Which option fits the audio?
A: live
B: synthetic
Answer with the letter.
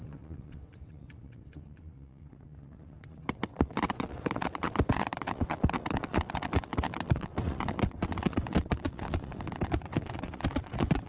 B